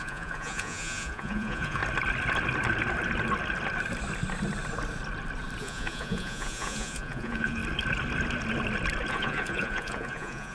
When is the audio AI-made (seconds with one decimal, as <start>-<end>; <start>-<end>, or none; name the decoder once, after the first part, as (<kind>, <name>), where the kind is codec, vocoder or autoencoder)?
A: 0.0-1.8 (vocoder, Vocos); 5.6-7.6; 9.1-10.5